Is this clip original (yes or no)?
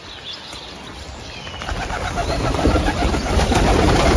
yes